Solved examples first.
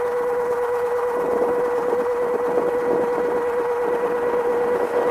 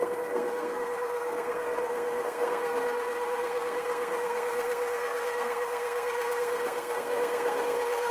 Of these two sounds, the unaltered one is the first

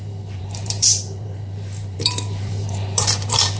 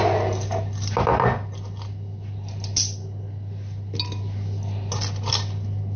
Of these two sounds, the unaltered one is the second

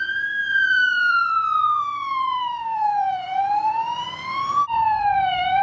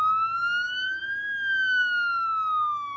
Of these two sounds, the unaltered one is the second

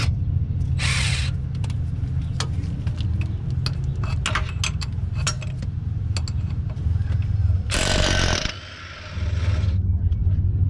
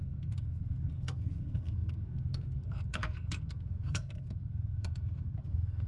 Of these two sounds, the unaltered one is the first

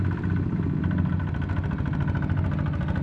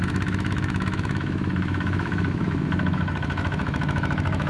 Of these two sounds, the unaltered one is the first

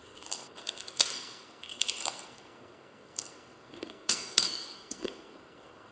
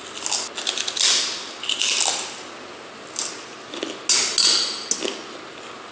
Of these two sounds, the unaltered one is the second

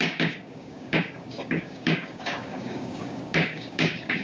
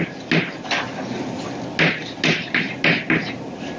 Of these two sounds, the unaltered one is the second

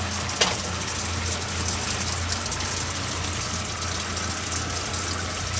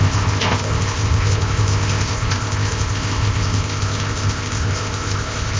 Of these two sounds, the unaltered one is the first